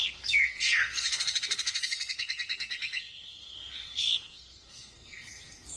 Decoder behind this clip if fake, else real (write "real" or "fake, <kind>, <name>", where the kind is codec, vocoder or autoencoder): fake, codec, SNAC